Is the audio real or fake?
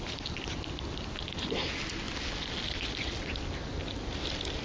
real